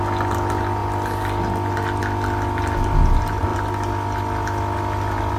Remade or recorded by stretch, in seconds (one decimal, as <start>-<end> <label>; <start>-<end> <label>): 0.0-5.4 recorded